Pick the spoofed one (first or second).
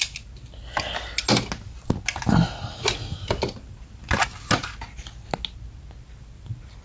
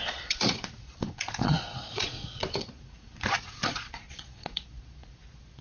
second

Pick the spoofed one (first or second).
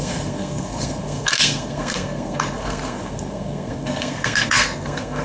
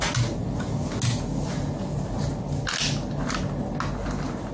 first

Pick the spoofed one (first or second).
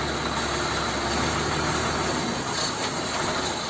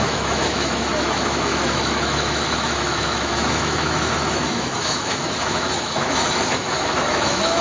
second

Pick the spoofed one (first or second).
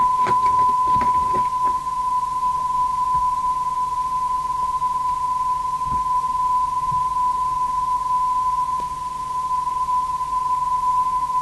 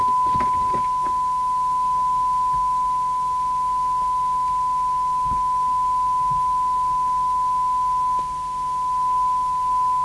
first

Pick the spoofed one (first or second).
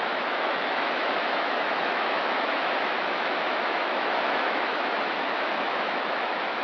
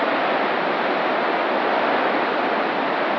first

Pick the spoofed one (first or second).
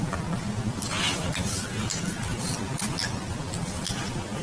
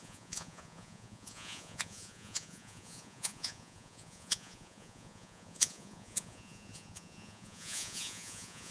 second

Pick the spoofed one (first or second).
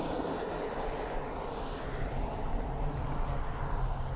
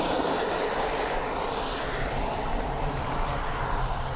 second